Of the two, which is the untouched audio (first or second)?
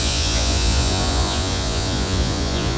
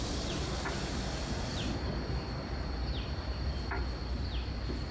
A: second